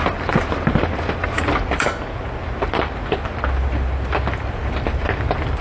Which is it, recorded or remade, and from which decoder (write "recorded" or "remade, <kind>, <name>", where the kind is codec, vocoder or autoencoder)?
remade, vocoder, BigVGAN v2